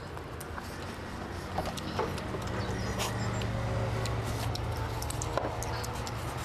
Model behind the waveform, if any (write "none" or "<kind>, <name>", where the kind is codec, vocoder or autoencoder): none